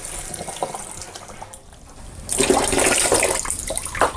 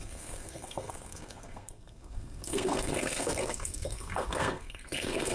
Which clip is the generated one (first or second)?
second